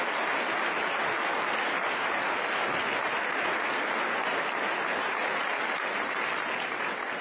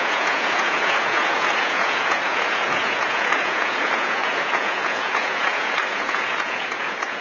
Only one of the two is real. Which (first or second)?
first